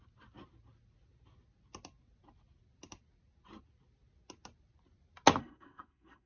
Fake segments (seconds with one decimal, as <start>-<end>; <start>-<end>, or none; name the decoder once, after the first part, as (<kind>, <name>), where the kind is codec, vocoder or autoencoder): 5.4-6.3 (codec, SNAC)